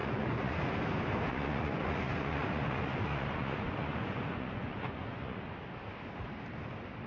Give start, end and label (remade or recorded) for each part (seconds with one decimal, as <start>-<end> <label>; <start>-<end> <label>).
0.0-0.6 remade; 0.6-1.3 recorded; 1.3-5.5 remade; 5.5-7.1 recorded